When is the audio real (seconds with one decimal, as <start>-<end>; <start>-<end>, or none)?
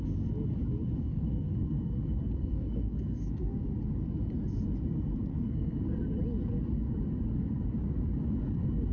0.0-1.0; 1.9-2.4; 3.5-5.3; 5.8-8.9